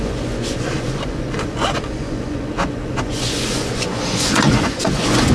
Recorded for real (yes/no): no